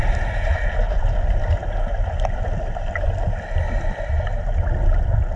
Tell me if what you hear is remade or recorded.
recorded